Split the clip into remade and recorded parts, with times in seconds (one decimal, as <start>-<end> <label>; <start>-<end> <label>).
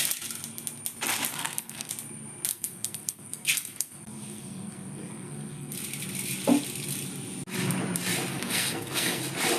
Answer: 0.0-1.3 recorded; 1.3-1.9 remade; 1.9-2.5 recorded; 2.5-5.7 remade; 5.7-8.3 recorded; 8.3-9.2 remade; 9.2-9.6 recorded